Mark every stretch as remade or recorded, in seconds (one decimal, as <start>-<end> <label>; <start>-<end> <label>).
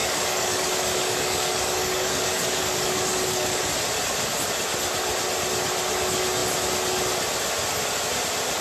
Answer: 0.0-3.6 remade; 3.6-8.6 recorded